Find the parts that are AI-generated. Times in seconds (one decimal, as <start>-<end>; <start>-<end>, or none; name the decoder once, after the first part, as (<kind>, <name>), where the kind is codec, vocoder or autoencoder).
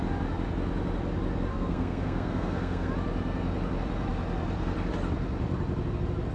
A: 1.5-2.9 (codec, SNAC)